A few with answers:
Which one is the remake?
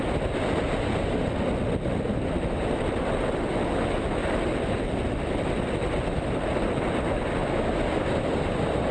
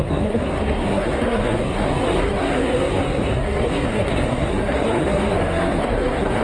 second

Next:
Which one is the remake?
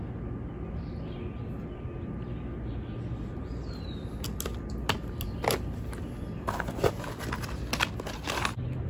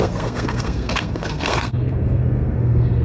second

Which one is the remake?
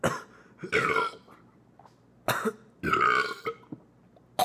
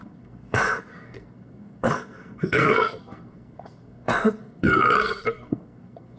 second